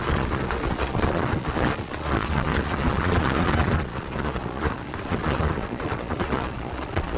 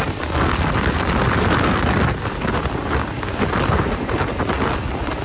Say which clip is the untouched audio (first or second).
second